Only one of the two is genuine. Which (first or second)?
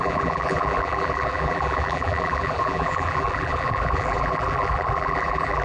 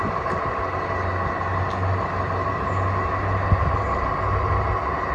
second